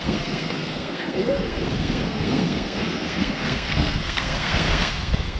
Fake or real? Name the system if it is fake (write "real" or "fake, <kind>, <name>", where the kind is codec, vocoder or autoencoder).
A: fake, codec, SNAC